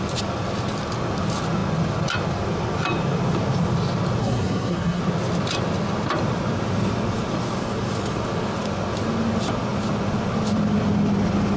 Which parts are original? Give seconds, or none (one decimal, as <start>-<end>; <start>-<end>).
0.0-4.2; 5.0-11.6